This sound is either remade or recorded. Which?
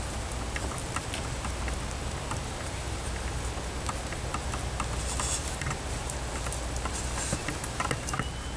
recorded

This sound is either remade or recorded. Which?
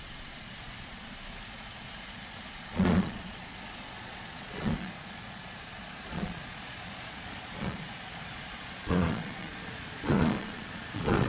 remade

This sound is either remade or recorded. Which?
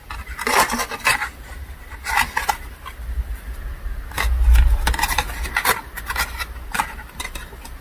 recorded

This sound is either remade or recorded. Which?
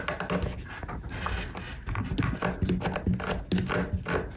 recorded